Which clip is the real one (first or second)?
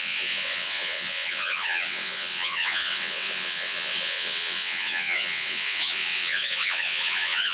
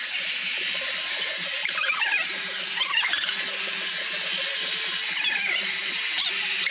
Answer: second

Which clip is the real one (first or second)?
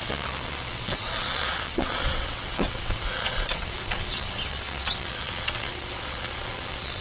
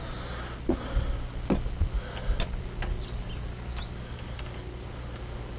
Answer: second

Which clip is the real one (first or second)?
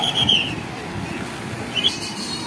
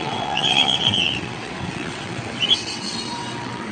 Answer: first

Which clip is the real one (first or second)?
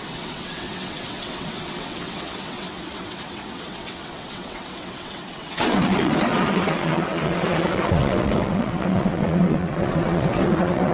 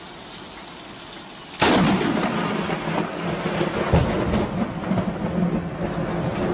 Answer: second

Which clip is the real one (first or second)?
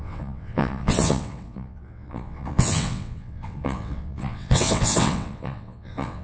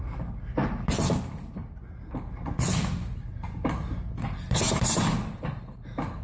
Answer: second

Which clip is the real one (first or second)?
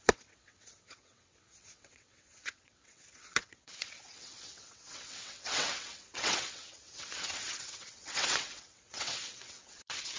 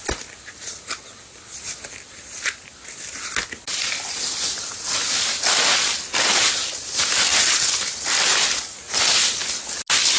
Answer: second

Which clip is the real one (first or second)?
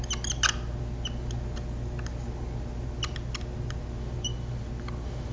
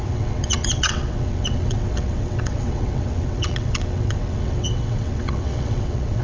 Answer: first